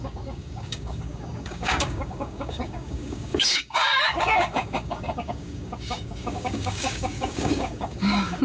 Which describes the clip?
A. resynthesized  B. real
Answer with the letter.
A